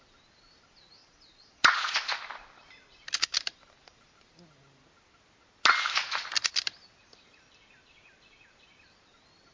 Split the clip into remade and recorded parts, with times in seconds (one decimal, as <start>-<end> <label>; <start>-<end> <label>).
0.0-1.0 recorded; 1.0-2.0 remade; 2.0-9.5 recorded